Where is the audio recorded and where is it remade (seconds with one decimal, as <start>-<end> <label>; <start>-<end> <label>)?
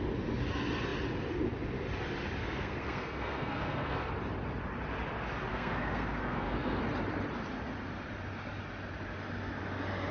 0.0-2.4 recorded; 2.4-4.1 remade; 4.1-5.5 recorded; 5.5-6.8 remade; 6.8-10.1 recorded